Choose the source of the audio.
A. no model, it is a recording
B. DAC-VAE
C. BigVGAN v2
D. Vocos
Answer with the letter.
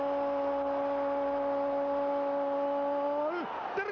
A